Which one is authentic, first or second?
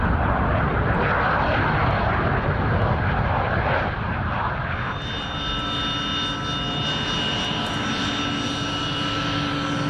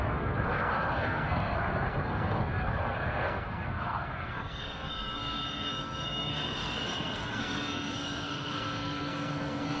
first